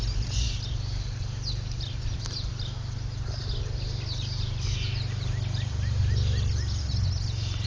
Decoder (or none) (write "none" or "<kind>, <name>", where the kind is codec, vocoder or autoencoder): none